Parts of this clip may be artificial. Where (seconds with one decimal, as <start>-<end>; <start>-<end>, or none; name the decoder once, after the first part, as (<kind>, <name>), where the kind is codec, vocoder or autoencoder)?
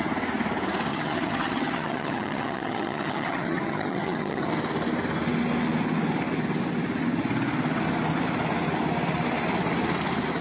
0.9-4.5 (vocoder, HiFi-GAN)